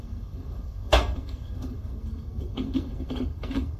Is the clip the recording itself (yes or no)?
no